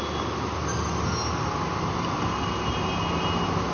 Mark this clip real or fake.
real